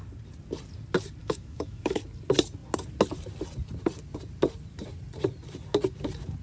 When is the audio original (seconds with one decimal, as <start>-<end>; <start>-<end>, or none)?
0.0-1.2; 2.0-6.4